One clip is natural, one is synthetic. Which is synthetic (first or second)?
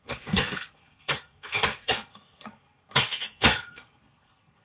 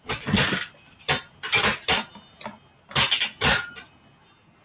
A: first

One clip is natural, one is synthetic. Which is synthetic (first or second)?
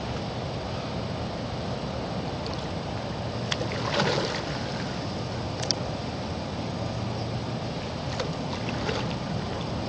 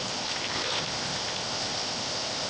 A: second